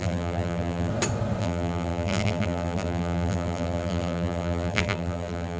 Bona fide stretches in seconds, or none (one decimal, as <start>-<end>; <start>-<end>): 0.9-1.4